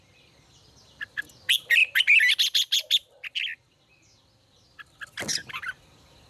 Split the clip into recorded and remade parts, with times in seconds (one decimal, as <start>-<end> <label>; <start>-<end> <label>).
0.0-6.3 recorded